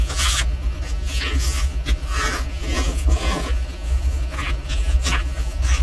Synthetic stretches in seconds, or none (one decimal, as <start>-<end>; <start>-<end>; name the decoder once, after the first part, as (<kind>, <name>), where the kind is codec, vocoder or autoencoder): 0.0-5.8 (vocoder, Vocos)